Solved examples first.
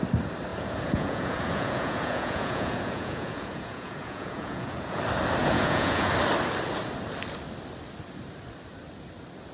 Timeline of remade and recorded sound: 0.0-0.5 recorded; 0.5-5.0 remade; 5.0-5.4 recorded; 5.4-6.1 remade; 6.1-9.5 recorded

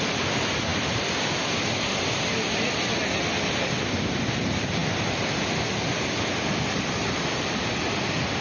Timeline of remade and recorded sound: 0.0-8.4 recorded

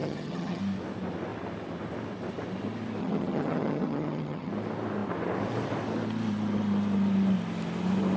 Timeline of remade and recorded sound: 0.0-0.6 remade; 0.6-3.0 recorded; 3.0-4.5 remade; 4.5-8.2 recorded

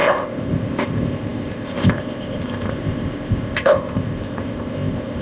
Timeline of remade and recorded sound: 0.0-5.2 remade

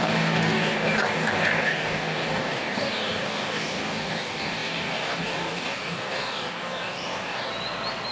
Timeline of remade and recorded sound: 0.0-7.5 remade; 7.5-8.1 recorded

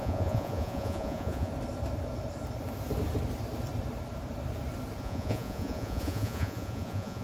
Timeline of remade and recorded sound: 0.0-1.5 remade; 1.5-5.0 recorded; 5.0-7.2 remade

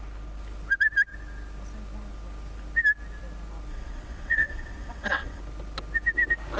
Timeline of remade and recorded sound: 0.0-3.7 recorded; 3.7-5.4 remade; 5.4-6.6 recorded